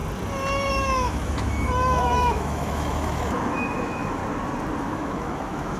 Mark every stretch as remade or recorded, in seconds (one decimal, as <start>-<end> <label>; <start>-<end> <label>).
0.0-0.7 recorded; 0.7-4.2 remade; 4.2-4.8 recorded; 4.8-5.8 remade